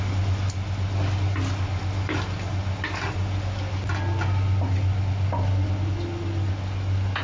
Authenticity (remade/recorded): recorded